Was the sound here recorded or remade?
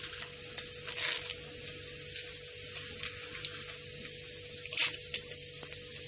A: recorded